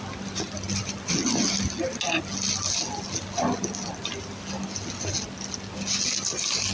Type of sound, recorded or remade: recorded